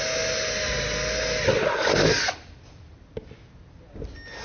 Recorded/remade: recorded